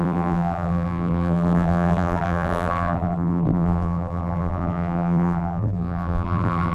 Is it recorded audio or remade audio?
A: remade